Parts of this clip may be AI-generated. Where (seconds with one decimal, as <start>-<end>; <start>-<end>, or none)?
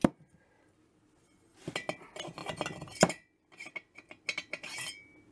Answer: none